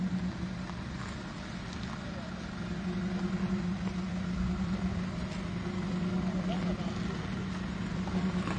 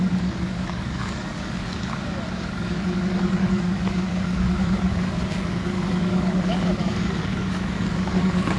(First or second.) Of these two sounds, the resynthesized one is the second